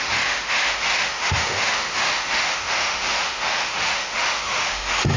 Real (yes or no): no